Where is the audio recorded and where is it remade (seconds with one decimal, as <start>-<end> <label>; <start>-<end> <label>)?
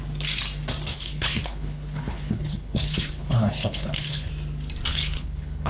0.0-0.9 recorded; 0.9-4.3 remade; 4.3-4.9 recorded; 4.9-5.7 remade